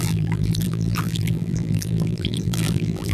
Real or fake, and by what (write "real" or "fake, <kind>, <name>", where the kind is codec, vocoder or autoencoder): fake, vocoder, BigVGAN v2